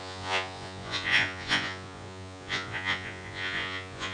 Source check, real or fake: fake